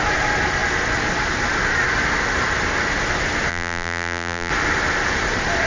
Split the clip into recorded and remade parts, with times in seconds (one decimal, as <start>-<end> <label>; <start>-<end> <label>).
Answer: 0.0-3.5 recorded; 3.5-4.5 remade; 4.5-5.7 recorded